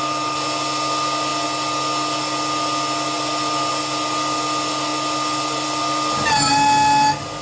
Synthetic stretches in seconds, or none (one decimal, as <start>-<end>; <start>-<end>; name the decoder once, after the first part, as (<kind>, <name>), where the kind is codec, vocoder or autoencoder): none